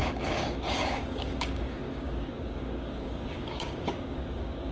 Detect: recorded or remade remade